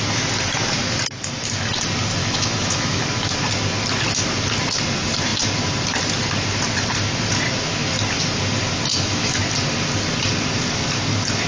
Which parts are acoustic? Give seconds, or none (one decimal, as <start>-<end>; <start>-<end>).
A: 0.0-2.2; 3.0-8.9; 9.4-11.5